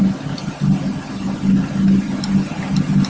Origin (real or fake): real